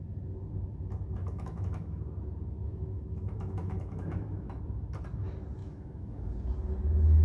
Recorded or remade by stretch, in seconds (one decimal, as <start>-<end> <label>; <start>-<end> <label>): 0.0-1.2 recorded; 1.2-2.0 remade; 2.0-2.7 recorded; 2.7-4.6 remade; 4.6-5.6 recorded; 5.6-6.3 remade; 6.3-7.2 recorded